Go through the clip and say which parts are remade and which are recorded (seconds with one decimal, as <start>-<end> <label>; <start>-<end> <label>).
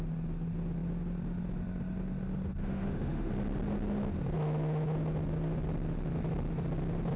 0.0-2.6 recorded; 2.6-3.3 remade; 3.3-7.2 recorded